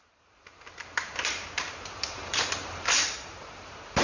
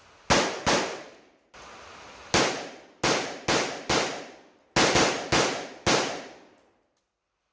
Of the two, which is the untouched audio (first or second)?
second